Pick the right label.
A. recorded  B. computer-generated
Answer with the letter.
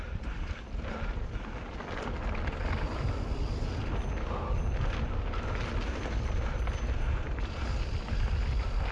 A